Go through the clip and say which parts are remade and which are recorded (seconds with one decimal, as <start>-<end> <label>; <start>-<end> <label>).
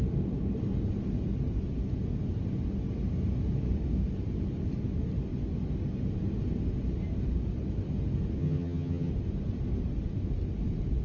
0.0-8.4 recorded; 8.4-9.1 remade; 9.1-11.0 recorded